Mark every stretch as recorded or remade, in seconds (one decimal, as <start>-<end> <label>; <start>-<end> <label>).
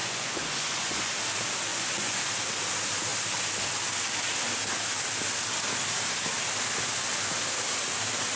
0.0-1.1 remade; 1.1-1.7 recorded; 1.7-2.2 remade; 2.2-8.4 recorded